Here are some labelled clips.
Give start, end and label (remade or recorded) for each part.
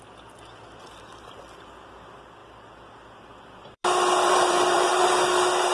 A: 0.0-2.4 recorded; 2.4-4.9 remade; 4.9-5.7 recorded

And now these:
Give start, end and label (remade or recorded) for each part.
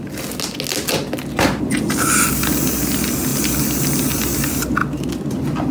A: 0.0-5.7 recorded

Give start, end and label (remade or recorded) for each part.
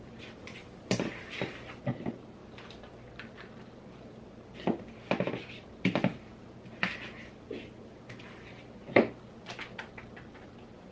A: 0.0-10.9 recorded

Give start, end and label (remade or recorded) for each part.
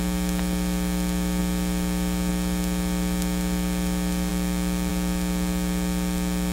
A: 0.0-6.5 recorded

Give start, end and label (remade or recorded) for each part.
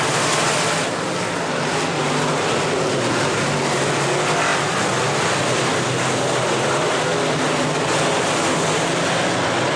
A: 0.0-9.8 recorded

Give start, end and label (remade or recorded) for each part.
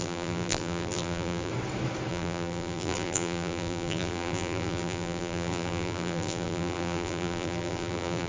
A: 0.0-1.5 remade; 1.5-2.1 recorded; 2.1-8.3 remade